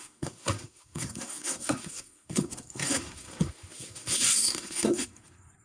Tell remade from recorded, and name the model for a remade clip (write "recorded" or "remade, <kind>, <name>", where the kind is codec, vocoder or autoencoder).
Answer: remade, codec, SNAC